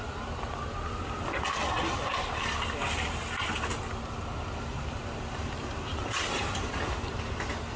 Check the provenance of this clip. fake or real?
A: real